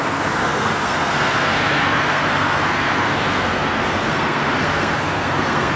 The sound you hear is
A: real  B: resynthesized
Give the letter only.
B